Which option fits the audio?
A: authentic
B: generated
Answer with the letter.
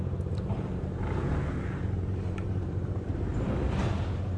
B